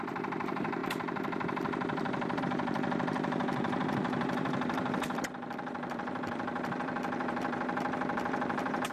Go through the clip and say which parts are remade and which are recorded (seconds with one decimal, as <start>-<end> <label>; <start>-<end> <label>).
0.0-8.9 remade